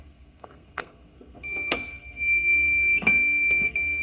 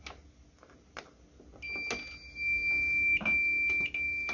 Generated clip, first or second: first